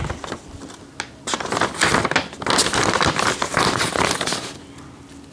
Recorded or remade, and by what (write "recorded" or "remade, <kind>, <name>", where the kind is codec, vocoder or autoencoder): recorded